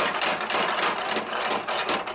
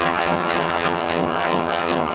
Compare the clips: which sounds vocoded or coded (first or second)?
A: second